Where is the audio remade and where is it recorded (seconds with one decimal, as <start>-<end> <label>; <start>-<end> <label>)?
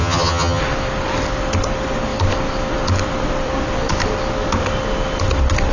0.0-0.6 remade; 0.6-5.7 recorded